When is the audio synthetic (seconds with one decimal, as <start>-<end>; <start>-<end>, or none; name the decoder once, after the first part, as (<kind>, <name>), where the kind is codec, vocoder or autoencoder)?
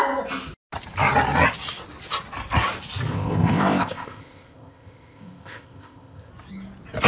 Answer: 3.1-6.3 (codec, ZipCodec)